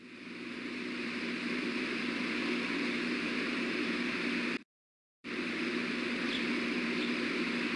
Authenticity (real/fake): fake